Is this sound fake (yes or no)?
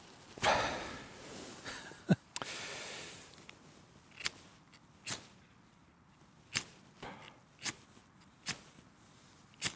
no